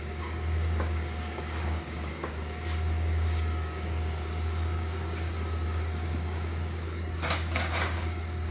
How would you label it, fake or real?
fake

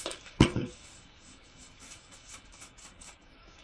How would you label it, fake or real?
fake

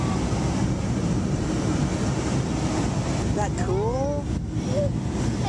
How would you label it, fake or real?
real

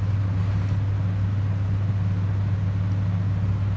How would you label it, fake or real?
real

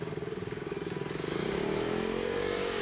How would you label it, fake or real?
fake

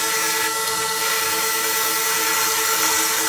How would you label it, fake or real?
fake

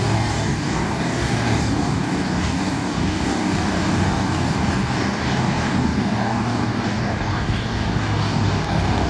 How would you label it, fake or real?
fake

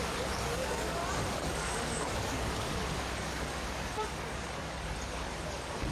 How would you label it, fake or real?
fake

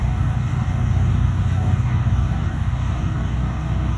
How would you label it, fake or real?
fake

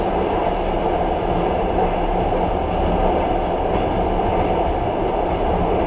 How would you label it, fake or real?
real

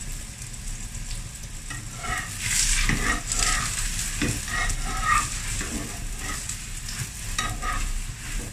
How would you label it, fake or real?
real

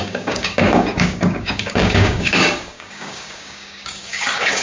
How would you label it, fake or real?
fake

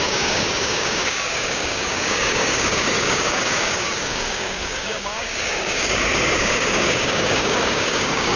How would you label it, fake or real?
fake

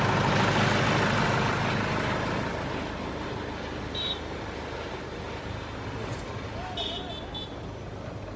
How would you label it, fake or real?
real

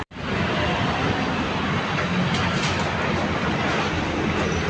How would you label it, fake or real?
real